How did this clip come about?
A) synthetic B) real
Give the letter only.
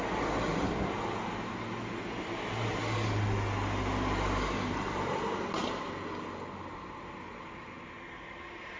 B